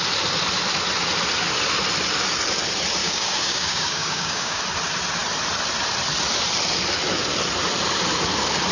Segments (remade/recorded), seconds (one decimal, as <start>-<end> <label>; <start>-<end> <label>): 0.0-3.0 recorded; 3.0-4.6 remade; 4.6-8.7 recorded